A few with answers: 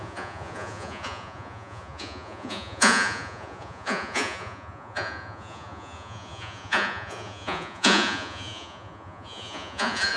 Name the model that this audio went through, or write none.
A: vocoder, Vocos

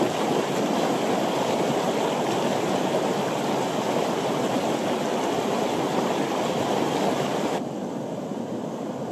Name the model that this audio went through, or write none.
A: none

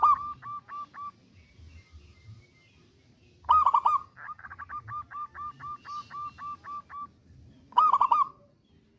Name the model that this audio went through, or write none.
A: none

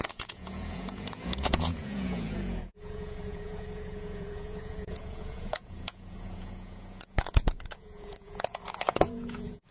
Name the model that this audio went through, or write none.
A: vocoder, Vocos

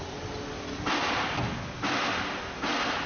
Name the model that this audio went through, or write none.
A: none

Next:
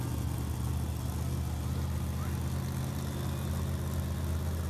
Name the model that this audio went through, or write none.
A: none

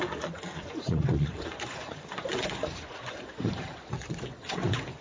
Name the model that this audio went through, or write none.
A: vocoder, Vocos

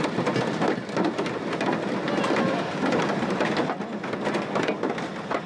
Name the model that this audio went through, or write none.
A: none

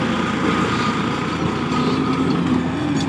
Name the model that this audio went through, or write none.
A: none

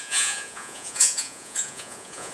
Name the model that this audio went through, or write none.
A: vocoder, Vocos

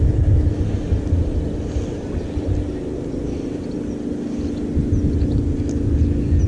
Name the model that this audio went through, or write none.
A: none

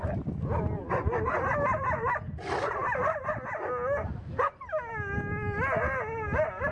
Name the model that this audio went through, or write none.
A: none